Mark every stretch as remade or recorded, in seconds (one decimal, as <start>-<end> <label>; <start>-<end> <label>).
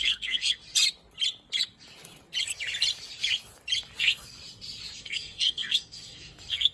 0.0-0.6 remade; 0.6-4.0 recorded; 4.0-4.4 remade; 4.4-5.0 recorded; 5.0-6.7 remade